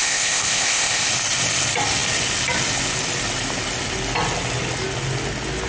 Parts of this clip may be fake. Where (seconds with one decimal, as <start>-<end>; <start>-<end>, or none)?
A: 0.0-1.1